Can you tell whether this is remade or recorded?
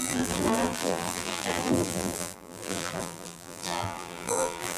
remade